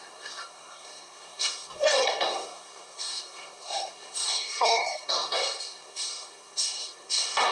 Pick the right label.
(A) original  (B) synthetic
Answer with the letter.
B